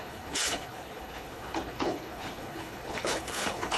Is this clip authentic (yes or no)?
no